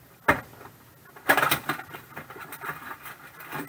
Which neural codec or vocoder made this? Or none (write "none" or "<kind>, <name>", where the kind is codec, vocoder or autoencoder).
none